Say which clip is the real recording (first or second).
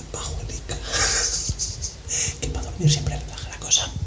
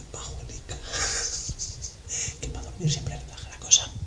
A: first